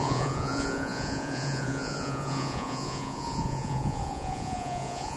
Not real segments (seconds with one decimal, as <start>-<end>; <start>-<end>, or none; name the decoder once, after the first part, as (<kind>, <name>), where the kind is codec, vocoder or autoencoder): 0.0-5.2 (vocoder, Vocos)